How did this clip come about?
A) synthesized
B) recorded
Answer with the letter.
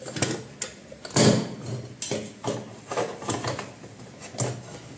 B